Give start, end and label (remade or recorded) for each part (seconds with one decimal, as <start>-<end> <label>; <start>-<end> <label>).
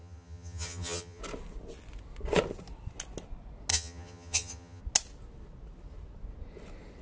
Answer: 0.0-1.2 remade; 1.2-3.7 recorded; 3.7-4.8 remade; 4.8-7.0 recorded